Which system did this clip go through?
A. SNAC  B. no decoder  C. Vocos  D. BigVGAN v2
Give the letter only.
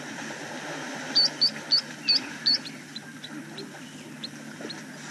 B